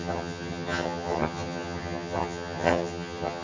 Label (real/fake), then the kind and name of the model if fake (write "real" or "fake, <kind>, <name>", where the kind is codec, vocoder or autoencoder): fake, vocoder, HiFi-GAN